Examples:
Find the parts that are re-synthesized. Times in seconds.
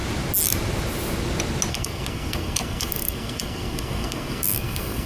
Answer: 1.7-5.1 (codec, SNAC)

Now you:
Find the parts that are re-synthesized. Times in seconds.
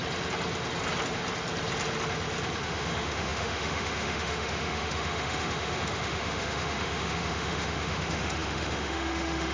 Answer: 2.6-9.5 (autoencoder, DAC-VAE)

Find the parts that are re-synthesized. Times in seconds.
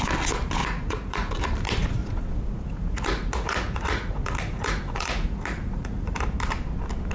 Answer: 0.6-1.3 (vocoder, Vocos); 2.0-6.2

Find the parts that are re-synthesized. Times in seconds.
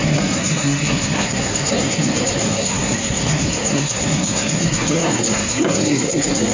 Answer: 0.0-6.5 (codec, SNAC)